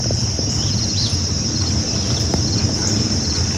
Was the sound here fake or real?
real